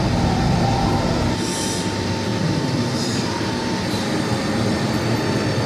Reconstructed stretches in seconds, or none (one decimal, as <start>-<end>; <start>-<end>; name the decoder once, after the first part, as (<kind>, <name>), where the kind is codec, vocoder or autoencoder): none